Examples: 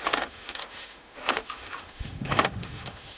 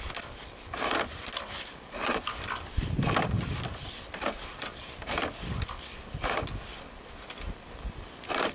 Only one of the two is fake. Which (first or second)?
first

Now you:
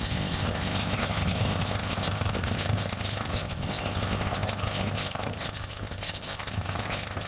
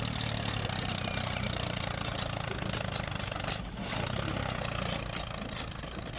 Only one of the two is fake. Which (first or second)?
first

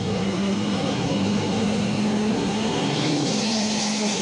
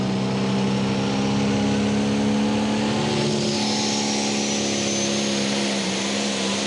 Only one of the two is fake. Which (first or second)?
first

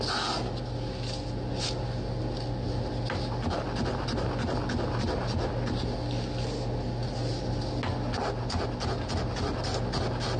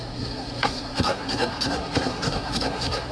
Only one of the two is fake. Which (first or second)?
second